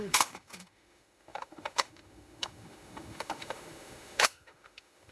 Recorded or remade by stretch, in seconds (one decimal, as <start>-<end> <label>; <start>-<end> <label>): 0.0-5.1 remade